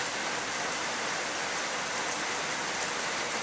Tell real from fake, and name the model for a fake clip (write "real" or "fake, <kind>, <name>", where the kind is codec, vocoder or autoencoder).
fake, vocoder, BigVGAN v2